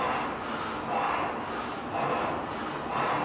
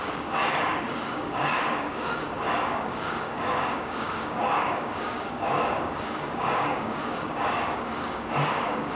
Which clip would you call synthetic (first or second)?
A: second